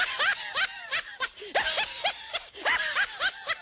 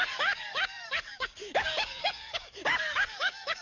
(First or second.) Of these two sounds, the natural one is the first